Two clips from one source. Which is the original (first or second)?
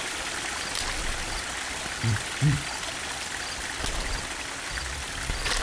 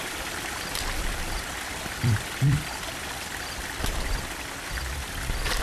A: first